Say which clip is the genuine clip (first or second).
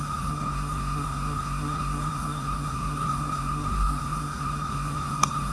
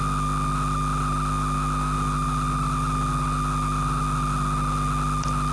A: second